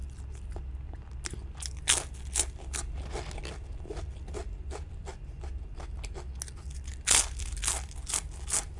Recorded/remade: recorded